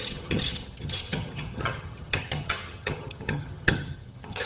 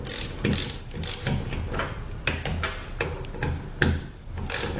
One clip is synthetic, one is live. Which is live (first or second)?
second